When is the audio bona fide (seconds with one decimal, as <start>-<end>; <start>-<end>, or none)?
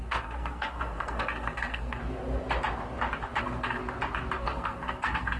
2.0-3.4; 3.8-4.4